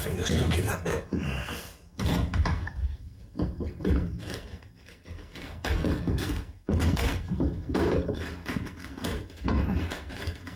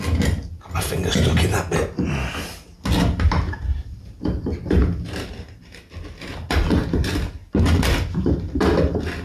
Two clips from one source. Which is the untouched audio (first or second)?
second